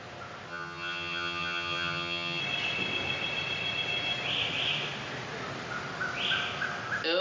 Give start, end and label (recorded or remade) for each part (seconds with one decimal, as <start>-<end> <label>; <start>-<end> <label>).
0.0-0.5 recorded; 0.5-2.4 remade; 2.4-7.2 recorded